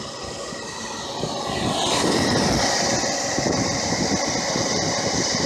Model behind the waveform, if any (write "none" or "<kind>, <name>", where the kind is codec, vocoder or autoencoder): vocoder, BigVGAN v2